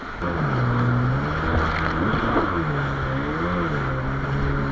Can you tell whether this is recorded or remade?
recorded